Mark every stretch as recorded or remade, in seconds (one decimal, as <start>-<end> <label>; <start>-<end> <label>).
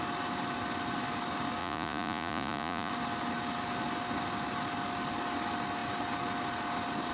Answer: 0.0-1.6 recorded; 1.6-2.9 remade; 2.9-7.1 recorded